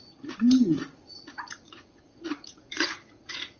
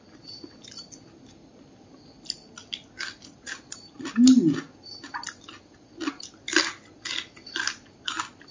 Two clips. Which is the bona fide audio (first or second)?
second